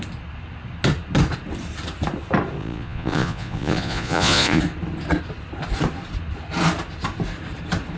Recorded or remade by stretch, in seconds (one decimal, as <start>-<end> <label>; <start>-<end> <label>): 0.0-2.6 recorded; 2.6-4.6 remade; 4.6-8.0 recorded